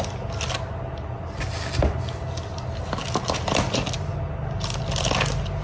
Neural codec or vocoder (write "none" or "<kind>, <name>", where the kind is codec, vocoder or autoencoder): none